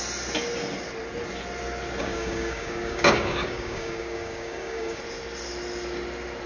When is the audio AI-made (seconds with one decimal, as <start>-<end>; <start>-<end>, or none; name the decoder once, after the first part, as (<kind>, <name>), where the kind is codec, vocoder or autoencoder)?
2.0-5.0 (codec, DAC)